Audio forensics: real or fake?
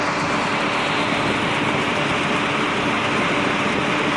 real